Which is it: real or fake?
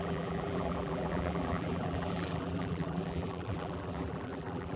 fake